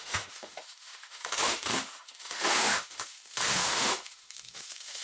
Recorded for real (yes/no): no